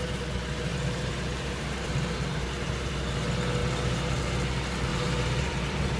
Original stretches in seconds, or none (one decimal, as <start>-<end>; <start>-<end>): 0.0-0.7; 2.9-3.6; 4.2-4.9